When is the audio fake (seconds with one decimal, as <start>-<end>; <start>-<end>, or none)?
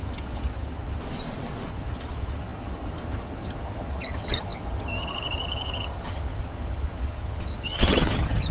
0.0-1.0; 1.7-8.5